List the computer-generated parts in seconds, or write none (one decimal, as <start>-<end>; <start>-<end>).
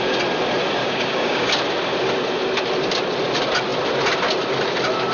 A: 0.8-1.5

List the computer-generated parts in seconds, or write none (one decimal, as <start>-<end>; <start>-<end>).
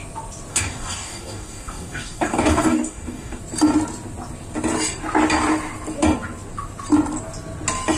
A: 0.5-3.4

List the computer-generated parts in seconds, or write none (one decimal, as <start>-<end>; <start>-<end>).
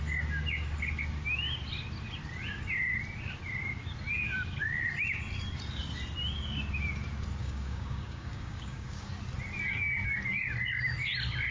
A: 7.4-9.1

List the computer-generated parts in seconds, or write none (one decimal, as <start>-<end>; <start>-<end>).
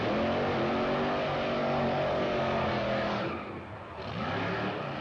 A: 1.6-3.3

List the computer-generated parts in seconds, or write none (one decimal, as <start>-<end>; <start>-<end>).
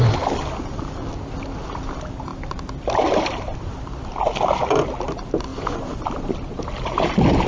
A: none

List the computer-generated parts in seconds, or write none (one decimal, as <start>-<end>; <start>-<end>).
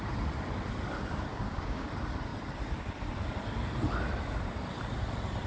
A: 1.3-1.9